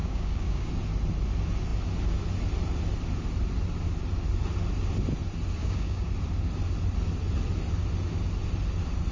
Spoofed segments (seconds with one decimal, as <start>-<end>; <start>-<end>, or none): 0.0-0.7; 5.6-6.1